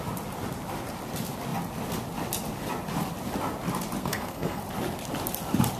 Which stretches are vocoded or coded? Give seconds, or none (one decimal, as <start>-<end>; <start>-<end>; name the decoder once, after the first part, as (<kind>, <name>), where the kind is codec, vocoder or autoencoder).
4.0-4.6 (codec, SNAC)